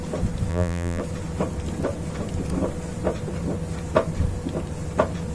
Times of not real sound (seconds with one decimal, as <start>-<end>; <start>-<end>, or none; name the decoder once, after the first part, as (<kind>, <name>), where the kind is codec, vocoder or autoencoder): 0.5-1.0 (vocoder, BigVGAN v2)